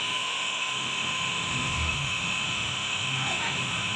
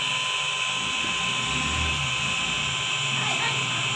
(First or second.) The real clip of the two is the second